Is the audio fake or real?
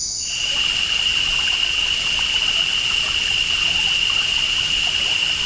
real